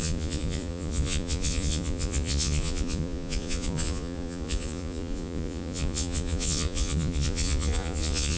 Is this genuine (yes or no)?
no